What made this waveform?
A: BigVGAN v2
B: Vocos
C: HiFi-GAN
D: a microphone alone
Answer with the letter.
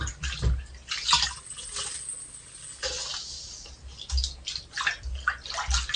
D